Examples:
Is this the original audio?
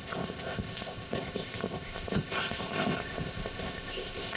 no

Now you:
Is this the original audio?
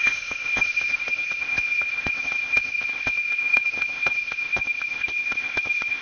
no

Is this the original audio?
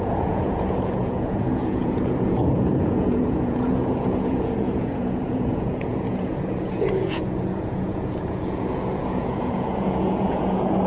no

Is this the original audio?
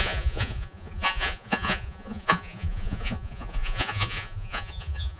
no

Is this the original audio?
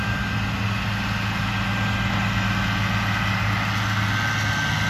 yes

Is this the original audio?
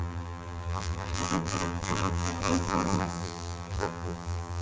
no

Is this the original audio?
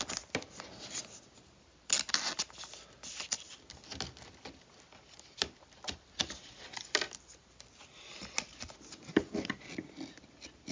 yes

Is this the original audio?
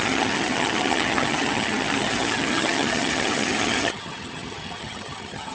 no